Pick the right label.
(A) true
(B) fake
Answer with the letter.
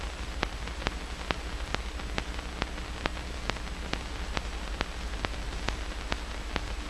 A